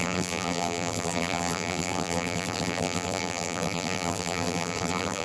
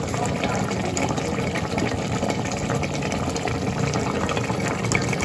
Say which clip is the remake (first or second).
first